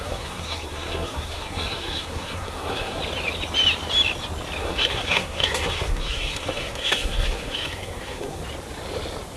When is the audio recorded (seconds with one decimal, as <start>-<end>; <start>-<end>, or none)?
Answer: 3.0-4.6; 8.4-9.4